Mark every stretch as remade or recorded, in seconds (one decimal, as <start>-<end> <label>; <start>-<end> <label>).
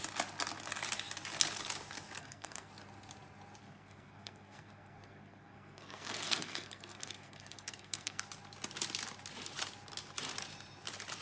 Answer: 0.0-2.2 recorded; 2.2-2.7 remade; 2.7-3.6 recorded; 3.6-8.2 remade; 8.2-11.2 recorded